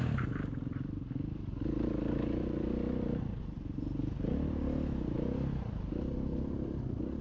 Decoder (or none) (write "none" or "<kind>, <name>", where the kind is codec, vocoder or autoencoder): none